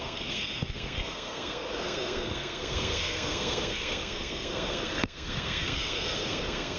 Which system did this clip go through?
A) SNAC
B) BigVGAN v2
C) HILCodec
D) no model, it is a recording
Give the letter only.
A